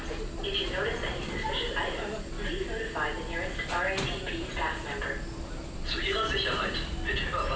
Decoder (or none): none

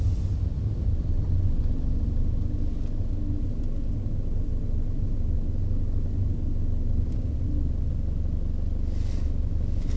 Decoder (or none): none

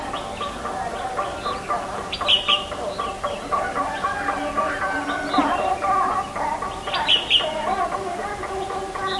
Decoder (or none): none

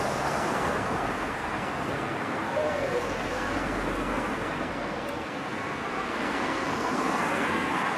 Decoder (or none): codec, SNAC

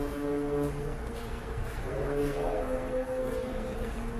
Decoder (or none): codec, SNAC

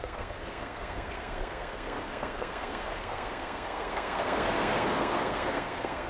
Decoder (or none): codec, SNAC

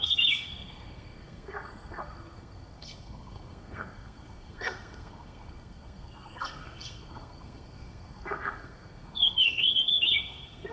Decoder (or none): codec, SNAC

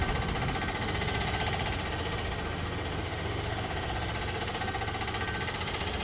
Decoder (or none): none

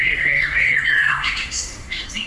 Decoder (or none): codec, SNAC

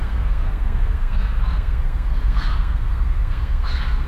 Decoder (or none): codec, SNAC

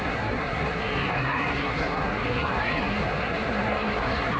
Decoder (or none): codec, SNAC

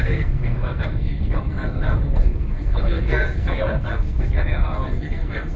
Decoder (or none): codec, SNAC